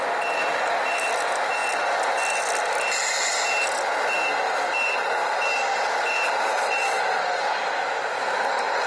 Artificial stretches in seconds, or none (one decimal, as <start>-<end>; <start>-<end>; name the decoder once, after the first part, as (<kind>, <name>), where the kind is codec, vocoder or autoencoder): none